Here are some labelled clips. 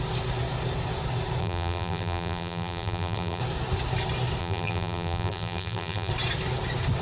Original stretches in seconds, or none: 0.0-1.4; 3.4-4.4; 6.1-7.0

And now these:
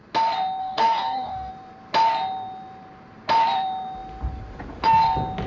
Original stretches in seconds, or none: 0.0-0.6; 1.5-5.5

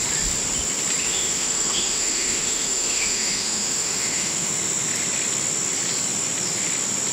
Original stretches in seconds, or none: 0.0-1.0; 4.5-7.1

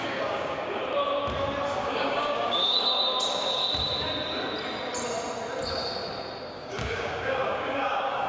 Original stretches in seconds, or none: 0.8-1.8; 3.6-6.5

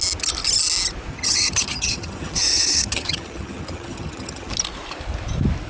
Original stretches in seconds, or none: 0.0-1.1; 4.5-5.7